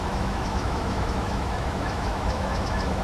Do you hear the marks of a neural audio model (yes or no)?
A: yes